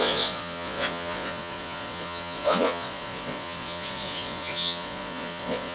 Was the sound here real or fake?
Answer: fake